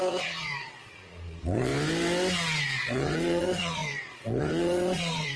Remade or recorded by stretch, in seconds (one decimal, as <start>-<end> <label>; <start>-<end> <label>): 0.0-1.7 remade; 1.7-2.6 recorded; 2.6-5.4 remade